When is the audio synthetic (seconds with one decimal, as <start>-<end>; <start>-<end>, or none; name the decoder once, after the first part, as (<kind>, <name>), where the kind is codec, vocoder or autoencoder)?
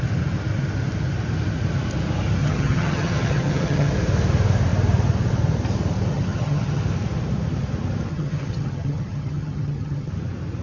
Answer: 2.4-3.9 (vocoder, HiFi-GAN); 6.1-6.8; 8.1-10.1